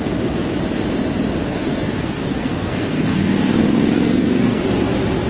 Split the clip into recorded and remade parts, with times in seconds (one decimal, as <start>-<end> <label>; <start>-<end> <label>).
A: 0.0-1.4 recorded; 1.4-4.6 remade; 4.6-5.3 recorded